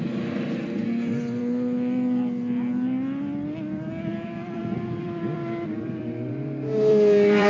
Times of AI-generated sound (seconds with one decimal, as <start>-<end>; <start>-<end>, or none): 4.1-4.6; 5.0-7.5